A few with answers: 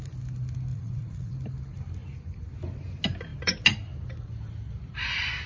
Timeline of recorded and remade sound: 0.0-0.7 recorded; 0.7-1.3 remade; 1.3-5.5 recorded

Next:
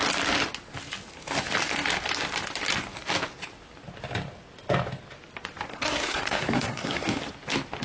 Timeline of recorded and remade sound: 0.0-5.7 recorded; 5.7-7.2 remade; 7.2-7.8 recorded

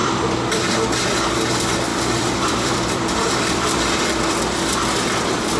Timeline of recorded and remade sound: 0.0-0.7 remade; 0.7-1.9 recorded; 1.9-4.3 remade; 4.3-5.6 recorded